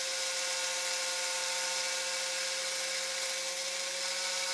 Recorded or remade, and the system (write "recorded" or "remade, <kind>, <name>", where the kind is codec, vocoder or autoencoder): recorded